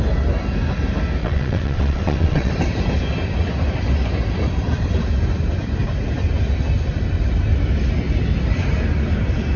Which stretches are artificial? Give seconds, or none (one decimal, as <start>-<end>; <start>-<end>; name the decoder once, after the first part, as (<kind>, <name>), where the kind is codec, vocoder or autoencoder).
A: 1.2-2.5 (vocoder, WaveNeXt)